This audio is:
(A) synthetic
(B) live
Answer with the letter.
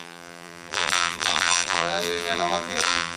A